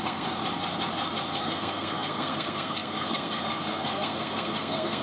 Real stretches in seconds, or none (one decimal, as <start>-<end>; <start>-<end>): 0.4-1.4